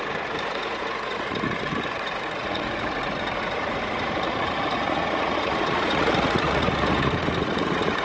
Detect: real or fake fake